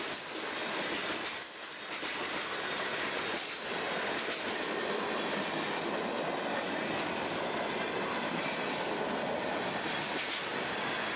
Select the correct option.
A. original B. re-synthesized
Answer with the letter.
A